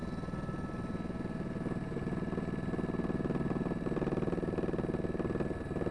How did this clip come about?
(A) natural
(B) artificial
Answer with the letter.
A